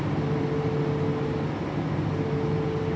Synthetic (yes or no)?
no